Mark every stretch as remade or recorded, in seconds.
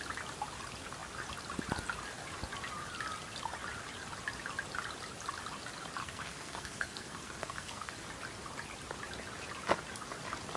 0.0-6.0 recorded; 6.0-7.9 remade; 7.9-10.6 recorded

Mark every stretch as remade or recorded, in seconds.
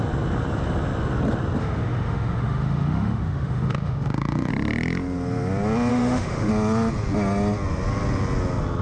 0.0-1.6 recorded; 1.6-4.5 remade; 4.5-5.9 recorded; 5.9-6.5 remade; 6.5-8.8 recorded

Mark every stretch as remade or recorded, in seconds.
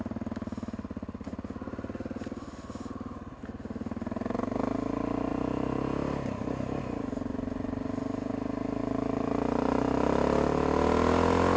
0.0-5.3 recorded; 5.3-6.8 remade; 6.8-8.8 recorded; 8.8-9.3 remade; 9.3-11.6 recorded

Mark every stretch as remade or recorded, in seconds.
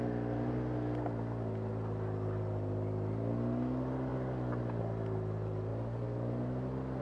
0.0-7.0 recorded